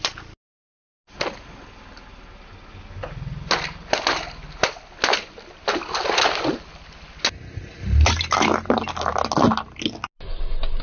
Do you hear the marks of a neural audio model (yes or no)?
no